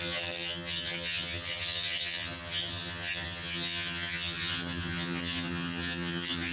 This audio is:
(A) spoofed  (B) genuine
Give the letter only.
A